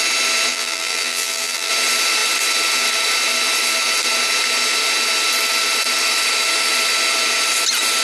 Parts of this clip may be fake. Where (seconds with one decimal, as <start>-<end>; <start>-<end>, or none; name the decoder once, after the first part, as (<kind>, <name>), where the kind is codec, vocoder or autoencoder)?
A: 0.5-1.7 (vocoder, BigVGAN v2)